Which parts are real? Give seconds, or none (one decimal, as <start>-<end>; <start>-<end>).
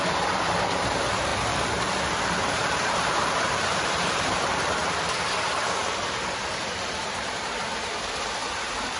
1.3-2.2